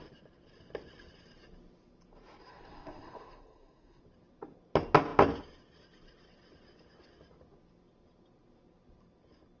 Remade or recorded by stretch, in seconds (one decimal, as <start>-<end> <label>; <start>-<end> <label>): 0.0-2.4 recorded; 2.4-4.0 remade; 4.0-9.6 recorded